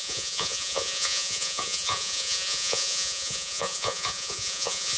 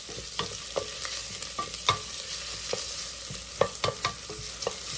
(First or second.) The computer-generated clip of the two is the first